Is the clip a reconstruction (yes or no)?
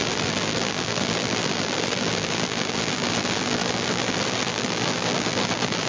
yes